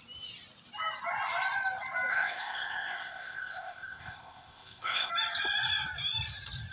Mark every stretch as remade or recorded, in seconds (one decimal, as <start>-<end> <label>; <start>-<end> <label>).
0.0-2.1 recorded; 2.1-5.1 remade; 5.1-6.7 recorded